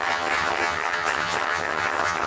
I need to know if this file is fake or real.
fake